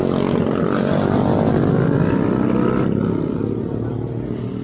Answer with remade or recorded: recorded